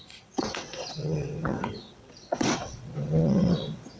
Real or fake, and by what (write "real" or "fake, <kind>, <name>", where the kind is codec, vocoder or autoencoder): fake, vocoder, WaveNeXt